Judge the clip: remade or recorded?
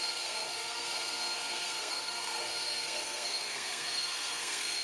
remade